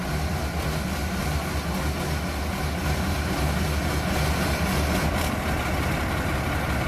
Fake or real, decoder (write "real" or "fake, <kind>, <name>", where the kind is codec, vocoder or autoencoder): real